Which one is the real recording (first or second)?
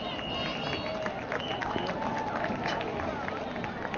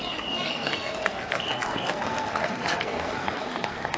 first